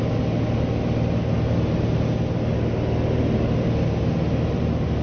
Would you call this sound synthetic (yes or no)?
no